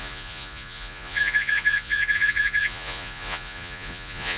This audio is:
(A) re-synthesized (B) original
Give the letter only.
A